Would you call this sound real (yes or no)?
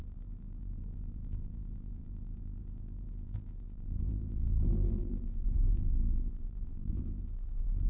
no